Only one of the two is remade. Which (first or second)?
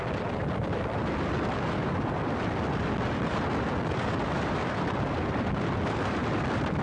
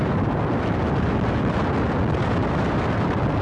first